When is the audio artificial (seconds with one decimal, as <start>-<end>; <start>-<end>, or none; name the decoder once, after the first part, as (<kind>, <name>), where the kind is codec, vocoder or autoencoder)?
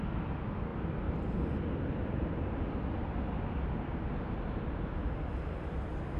none